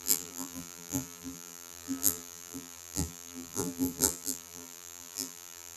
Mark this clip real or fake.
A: fake